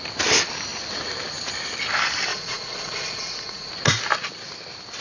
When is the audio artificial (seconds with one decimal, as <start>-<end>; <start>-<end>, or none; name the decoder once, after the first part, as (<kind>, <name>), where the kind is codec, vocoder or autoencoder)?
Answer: 2.3-3.7 (vocoder, Vocos)